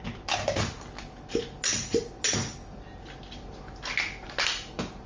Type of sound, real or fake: real